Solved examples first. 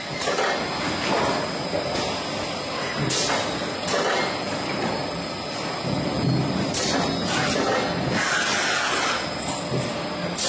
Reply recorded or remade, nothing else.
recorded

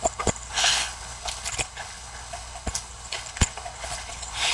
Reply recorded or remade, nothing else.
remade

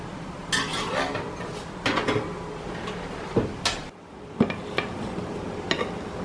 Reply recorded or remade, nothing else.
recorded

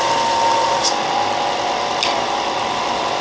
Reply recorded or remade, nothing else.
recorded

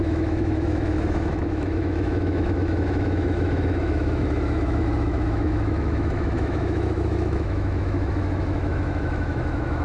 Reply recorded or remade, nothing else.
remade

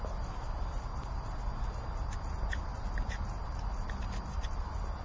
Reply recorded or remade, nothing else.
recorded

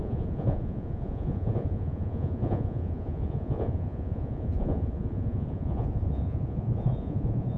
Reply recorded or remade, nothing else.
remade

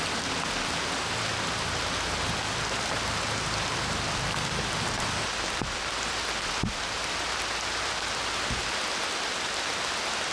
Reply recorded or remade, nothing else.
recorded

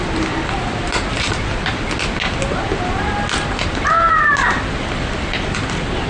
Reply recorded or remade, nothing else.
recorded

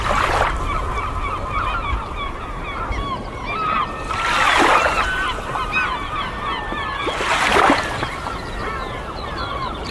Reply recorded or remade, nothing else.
recorded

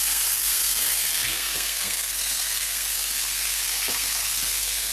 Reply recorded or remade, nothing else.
remade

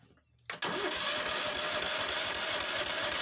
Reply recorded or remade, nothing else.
recorded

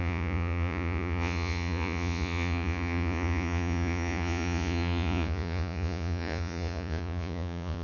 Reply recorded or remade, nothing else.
remade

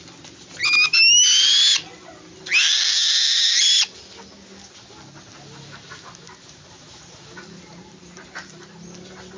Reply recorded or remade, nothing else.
recorded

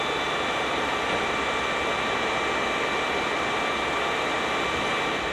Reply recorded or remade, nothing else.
recorded